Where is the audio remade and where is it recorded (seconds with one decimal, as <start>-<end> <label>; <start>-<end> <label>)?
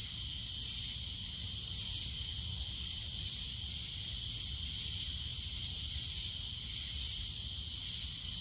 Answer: 0.0-2.3 recorded; 2.3-4.0 remade; 4.0-5.3 recorded; 5.3-5.8 remade; 5.8-8.4 recorded